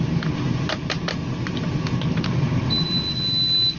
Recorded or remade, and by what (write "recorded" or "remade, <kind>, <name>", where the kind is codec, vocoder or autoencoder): recorded